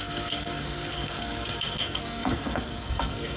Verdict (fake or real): fake